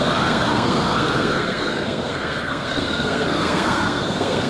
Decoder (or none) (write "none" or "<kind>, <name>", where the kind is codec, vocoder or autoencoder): codec, SNAC